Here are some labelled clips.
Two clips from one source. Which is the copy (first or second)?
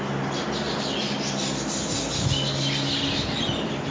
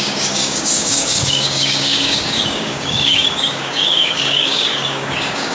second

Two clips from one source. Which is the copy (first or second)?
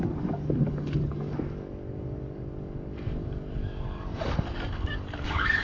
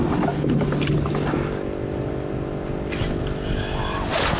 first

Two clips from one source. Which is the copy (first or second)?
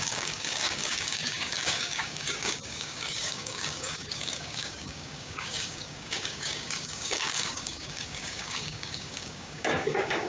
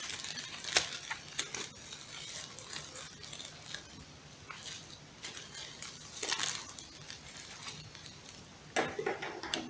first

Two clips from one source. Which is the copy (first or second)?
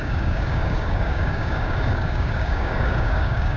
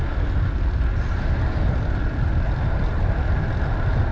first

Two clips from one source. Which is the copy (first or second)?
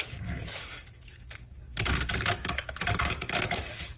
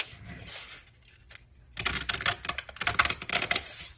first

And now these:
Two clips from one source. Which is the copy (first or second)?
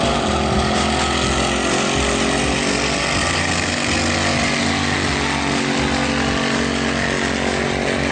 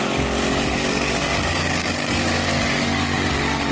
second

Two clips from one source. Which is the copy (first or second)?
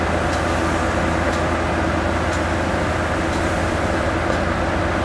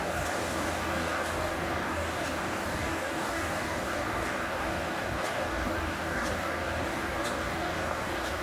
second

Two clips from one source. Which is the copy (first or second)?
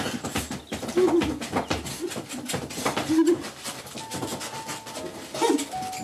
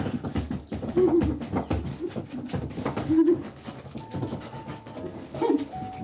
second